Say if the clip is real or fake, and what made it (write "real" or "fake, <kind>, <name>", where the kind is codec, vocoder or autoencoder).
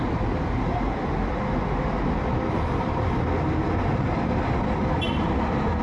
real